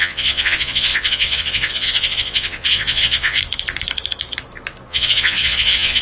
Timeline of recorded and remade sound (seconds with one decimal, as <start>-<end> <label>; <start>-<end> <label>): 0.0-3.4 remade; 3.4-4.9 recorded; 4.9-6.0 remade